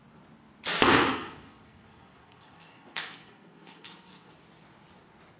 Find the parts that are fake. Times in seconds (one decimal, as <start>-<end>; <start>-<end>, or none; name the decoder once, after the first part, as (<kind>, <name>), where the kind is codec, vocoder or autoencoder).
1.1-4.3 (codec, SNAC)